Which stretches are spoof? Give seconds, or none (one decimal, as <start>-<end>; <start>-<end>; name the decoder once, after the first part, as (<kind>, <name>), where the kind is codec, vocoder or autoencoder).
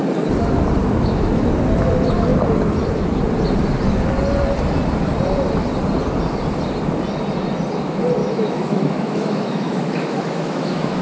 0.8-1.5 (autoencoder, DAC-VAE); 8.2-11.0